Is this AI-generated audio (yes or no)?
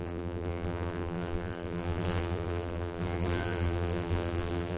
yes